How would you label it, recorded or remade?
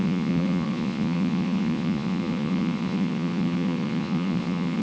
remade